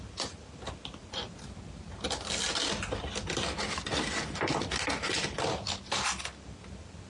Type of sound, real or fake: real